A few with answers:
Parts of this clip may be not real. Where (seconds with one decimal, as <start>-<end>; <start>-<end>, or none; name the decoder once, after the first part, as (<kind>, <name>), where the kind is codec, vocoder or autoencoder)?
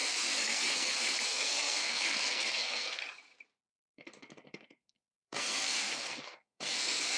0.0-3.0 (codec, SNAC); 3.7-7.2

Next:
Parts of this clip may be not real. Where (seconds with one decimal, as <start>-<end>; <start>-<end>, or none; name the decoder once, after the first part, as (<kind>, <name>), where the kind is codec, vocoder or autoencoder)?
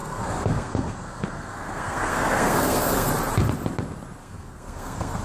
0.0-3.1 (codec, SNAC); 4.2-5.2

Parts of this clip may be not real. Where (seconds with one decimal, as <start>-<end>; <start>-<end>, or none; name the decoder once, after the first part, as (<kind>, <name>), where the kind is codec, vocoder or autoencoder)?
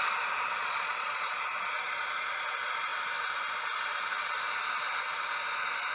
0.6-2.0 (vocoder, Vocos)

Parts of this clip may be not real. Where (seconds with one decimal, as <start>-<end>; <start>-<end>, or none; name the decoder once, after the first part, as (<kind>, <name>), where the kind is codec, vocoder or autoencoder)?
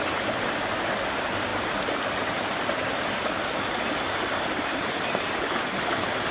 none